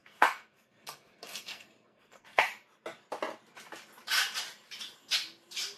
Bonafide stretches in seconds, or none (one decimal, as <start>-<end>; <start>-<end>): 2.5-5.8